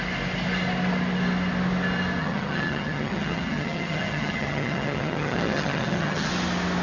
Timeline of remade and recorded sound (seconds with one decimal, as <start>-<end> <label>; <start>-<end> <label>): 0.0-2.2 recorded; 2.2-6.3 remade; 6.3-6.8 recorded